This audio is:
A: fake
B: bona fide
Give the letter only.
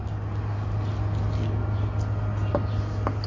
B